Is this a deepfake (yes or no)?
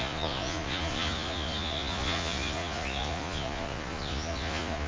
yes